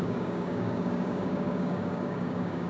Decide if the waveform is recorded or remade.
remade